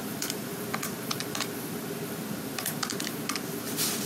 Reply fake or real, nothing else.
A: fake